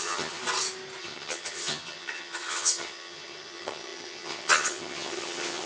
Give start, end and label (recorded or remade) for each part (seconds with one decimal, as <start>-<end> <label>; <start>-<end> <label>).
0.0-0.4 remade; 0.4-1.0 recorded; 1.0-5.7 remade